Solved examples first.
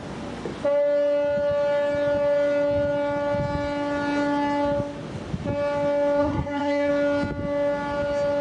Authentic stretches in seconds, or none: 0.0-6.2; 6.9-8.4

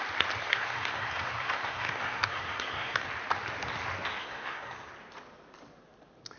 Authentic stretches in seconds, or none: 0.0-0.4; 3.1-4.2; 4.9-6.4

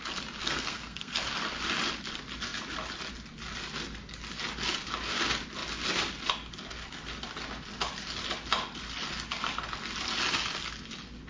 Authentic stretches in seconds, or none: 0.0-0.4; 1.2-11.3

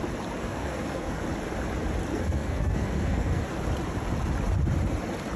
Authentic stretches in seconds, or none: 0.0-0.4; 1.2-2.1; 3.4-5.4

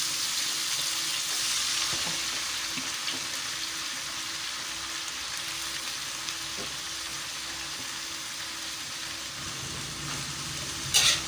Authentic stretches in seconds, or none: 0.0-11.3

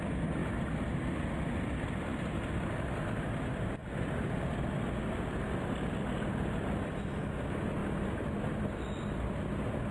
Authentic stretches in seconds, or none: 0.0-9.9

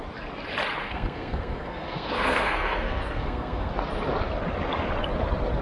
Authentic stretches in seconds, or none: 0.0-0.8; 3.7-5.6